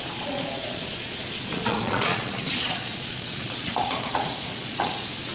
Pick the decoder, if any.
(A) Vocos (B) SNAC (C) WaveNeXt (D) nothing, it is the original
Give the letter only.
A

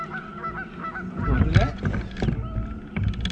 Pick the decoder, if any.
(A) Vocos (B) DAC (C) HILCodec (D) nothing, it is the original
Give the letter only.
D